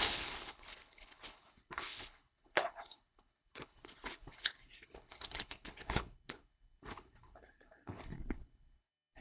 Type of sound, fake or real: fake